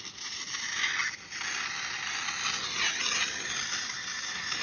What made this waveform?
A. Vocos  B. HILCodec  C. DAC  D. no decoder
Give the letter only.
D